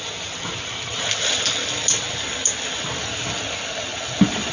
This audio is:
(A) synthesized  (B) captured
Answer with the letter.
B